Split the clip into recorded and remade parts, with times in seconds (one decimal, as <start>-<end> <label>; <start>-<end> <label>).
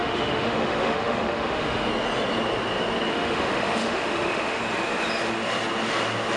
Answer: 0.0-1.9 remade; 1.9-3.1 recorded; 3.1-4.6 remade; 4.6-6.4 recorded